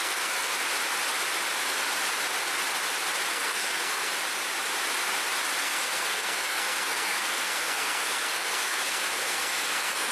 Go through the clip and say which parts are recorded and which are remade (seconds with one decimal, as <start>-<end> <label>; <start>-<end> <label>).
0.0-0.5 remade; 0.5-3.3 recorded; 3.3-4.1 remade; 4.1-5.6 recorded; 5.6-10.1 remade